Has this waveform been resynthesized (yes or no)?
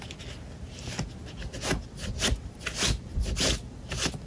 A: no